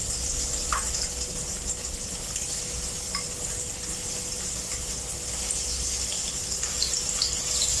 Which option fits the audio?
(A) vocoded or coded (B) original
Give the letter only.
B